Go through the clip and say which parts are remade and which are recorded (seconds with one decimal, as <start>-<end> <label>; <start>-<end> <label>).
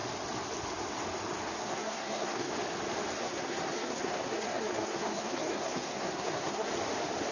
0.0-1.6 recorded; 1.6-2.5 remade; 2.5-3.2 recorded; 3.2-6.7 remade; 6.7-7.3 recorded